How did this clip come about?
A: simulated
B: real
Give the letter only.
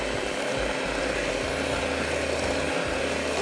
B